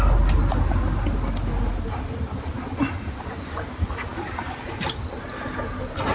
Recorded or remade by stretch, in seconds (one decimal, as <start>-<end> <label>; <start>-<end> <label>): 0.0-6.1 recorded